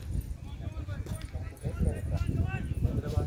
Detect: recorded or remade recorded